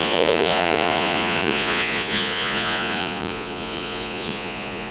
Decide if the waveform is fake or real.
fake